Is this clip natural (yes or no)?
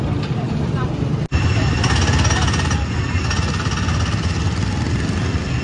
yes